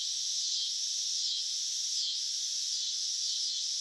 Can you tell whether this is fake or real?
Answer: real